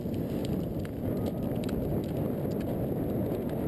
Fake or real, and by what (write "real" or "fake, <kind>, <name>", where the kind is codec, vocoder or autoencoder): real